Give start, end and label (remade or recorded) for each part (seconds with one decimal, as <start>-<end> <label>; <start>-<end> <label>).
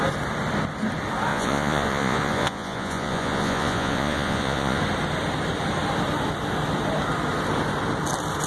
0.0-1.3 recorded; 1.3-4.8 remade; 4.8-8.5 recorded